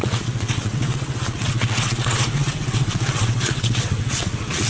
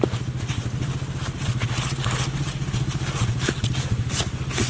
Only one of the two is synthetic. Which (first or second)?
first